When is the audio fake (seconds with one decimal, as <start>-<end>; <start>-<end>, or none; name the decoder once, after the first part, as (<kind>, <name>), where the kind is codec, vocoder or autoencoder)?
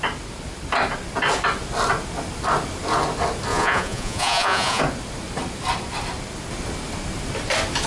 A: 3.5-4.8 (vocoder, Vocos)